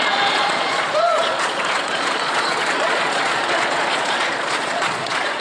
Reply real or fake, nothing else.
fake